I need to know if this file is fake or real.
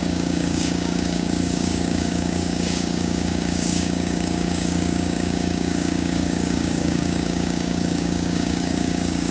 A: fake